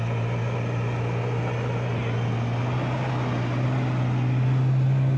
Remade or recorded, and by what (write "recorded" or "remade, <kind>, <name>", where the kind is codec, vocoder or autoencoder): recorded